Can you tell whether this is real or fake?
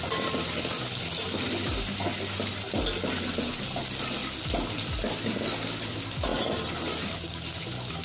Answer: real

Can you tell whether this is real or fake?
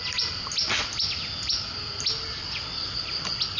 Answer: real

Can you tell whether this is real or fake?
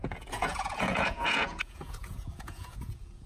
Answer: fake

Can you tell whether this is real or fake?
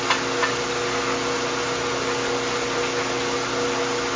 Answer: real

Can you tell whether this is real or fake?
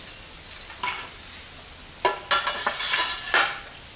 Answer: real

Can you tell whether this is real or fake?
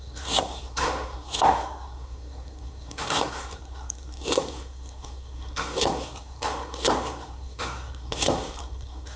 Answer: fake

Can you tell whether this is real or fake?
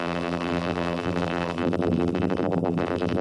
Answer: fake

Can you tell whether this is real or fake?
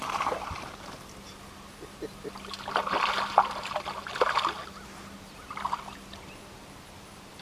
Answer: real